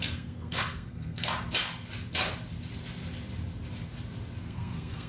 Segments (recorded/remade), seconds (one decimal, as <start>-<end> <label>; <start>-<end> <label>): 0.0-1.3 remade; 1.3-4.4 recorded; 4.4-5.1 remade